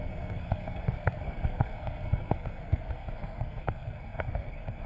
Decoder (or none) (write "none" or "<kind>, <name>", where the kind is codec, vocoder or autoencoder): codec, SNAC